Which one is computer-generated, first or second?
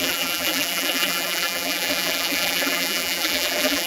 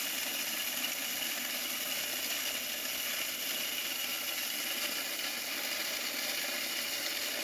first